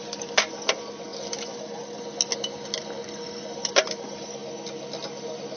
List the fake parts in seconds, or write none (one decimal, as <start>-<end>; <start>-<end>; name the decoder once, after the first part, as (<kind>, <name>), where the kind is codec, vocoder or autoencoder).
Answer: none